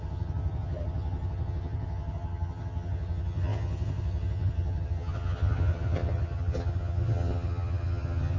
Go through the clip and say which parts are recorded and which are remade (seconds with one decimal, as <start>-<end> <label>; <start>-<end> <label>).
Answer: 0.0-8.4 remade